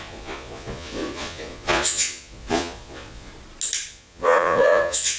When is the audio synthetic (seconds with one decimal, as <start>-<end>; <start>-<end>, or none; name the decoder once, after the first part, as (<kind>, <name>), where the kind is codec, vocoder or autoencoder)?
0.0-3.3 (vocoder, Vocos); 3.9-5.2